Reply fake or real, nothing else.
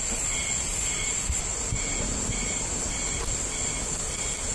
real